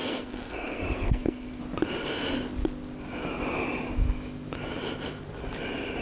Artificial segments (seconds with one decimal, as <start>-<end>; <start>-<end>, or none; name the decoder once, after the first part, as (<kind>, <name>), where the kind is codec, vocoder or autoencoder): 0.0-1.6 (codec, SNAC)